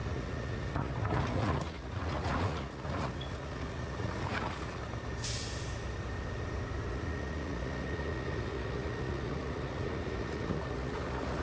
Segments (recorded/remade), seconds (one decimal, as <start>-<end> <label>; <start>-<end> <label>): 0.0-4.8 remade; 4.8-6.9 recorded; 6.9-11.4 remade